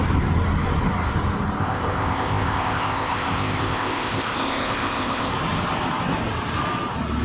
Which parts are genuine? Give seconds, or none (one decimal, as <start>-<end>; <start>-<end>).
0.0-1.6; 5.3-7.2